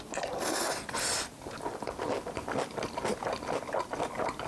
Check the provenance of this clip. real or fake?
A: real